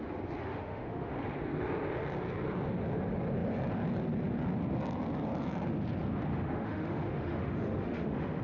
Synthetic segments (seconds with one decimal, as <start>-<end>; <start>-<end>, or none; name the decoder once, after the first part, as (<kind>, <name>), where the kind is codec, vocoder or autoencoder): 0.4-1.1 (autoencoder, DAC-VAE); 6.3-8.4

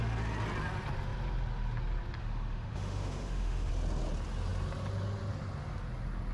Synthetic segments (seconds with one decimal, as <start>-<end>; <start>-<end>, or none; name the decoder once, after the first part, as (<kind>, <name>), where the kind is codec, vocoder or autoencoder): 2.2-3.7 (autoencoder, DAC-VAE)

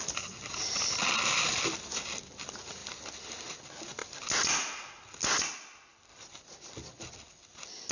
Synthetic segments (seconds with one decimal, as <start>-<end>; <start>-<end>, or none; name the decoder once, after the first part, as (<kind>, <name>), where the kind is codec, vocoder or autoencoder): none

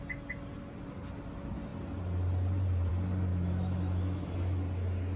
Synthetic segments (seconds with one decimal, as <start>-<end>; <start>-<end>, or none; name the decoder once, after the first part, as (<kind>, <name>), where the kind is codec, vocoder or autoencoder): 3.3-4.3 (autoencoder, DAC-VAE)

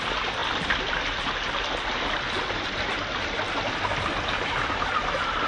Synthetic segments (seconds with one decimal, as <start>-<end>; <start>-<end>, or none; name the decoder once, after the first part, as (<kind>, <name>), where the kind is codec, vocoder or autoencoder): none

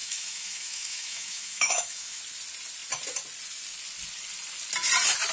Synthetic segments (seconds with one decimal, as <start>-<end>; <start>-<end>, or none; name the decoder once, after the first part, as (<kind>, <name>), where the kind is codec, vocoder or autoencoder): 0.0-2.2 (autoencoder, DAC-VAE)

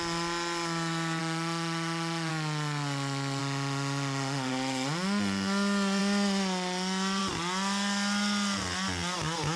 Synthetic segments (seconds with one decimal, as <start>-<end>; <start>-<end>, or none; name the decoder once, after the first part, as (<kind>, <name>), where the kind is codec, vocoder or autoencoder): 1.2-2.3 (autoencoder, DAC-VAE); 3.4-4.5

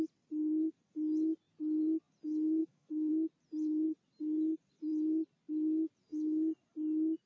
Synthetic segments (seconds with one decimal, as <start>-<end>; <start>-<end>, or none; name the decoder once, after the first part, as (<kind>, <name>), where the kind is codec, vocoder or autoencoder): 2.6-3.1 (autoencoder, DAC-VAE)